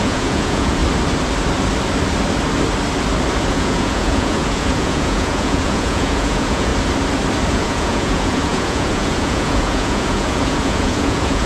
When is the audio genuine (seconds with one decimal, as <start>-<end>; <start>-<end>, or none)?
0.8-3.5; 6.7-7.5